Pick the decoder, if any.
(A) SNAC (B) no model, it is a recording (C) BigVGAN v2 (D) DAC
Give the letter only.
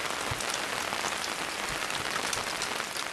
B